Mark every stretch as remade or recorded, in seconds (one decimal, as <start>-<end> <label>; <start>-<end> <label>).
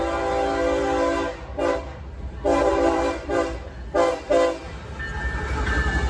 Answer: 0.0-2.7 recorded; 2.7-3.8 remade; 3.8-6.1 recorded